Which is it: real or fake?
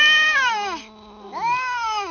real